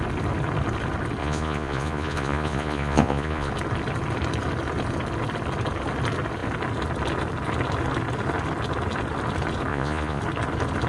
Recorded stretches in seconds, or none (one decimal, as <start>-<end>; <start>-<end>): 0.0-1.2; 3.5-9.7; 10.2-10.9